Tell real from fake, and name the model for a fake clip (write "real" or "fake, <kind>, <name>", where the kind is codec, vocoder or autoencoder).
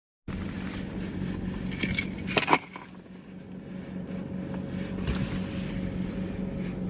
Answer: real